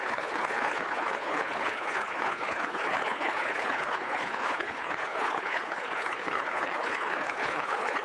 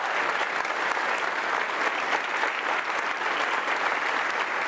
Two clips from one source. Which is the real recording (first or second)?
second